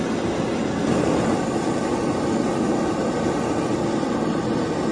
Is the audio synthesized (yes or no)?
no